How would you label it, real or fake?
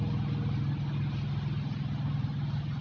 real